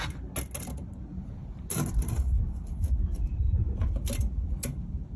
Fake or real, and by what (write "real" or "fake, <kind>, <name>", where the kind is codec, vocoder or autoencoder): real